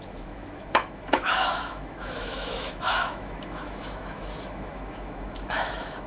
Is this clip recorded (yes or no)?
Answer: no